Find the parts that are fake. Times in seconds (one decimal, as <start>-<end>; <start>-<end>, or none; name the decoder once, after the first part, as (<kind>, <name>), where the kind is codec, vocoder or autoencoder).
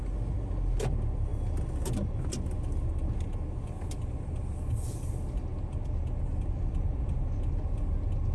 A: none